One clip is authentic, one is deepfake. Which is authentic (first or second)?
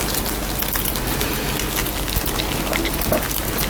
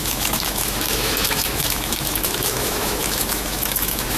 first